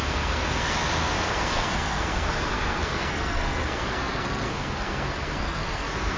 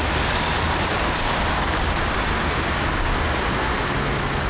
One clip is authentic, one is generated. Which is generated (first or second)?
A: first